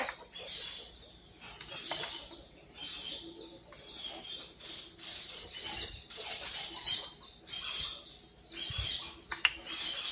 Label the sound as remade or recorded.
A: recorded